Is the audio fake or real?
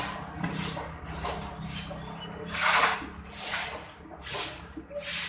real